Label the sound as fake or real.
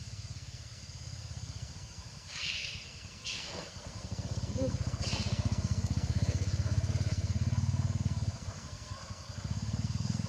fake